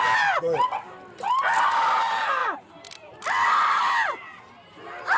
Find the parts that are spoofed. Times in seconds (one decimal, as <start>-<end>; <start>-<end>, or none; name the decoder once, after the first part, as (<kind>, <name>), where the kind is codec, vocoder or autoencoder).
none